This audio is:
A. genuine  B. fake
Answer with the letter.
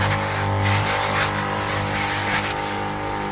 A